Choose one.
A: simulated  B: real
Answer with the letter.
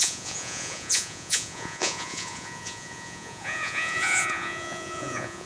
A